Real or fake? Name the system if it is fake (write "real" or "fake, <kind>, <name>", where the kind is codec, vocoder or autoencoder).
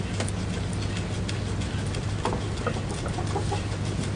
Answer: real